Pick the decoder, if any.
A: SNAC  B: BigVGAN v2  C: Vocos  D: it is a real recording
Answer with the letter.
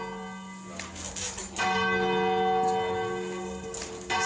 D